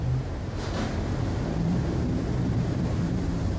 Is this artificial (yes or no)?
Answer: yes